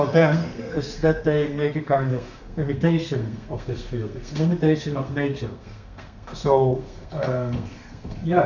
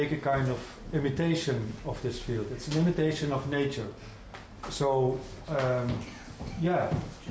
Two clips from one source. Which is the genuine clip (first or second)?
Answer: second